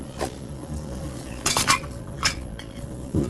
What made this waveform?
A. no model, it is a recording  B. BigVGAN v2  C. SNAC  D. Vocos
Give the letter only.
D